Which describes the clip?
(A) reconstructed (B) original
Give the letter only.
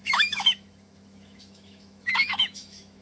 A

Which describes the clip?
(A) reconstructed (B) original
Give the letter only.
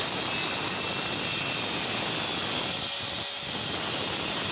B